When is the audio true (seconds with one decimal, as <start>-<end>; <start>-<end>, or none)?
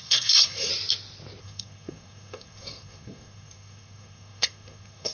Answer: 0.7-1.4